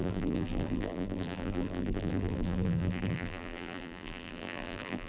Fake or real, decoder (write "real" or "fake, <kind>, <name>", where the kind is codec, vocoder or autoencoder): fake, vocoder, BigVGAN v2